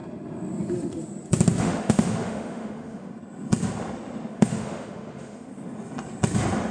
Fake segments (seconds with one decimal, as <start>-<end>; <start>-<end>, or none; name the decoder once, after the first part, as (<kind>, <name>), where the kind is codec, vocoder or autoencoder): 1.6-3.1 (autoencoder, DAC-VAE); 4.3-5.5